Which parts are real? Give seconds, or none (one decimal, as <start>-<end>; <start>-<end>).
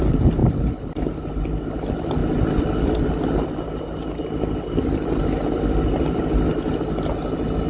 0.0-0.4; 1.3-2.2; 6.5-7.7